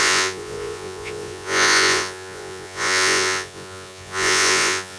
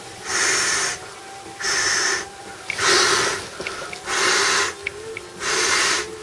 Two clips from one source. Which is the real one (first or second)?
second